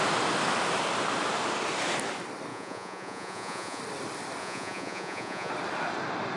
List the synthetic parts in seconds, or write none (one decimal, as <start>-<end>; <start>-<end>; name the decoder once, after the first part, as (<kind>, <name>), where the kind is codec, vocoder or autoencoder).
2.5-3.8 (vocoder, Vocos); 4.4-5.5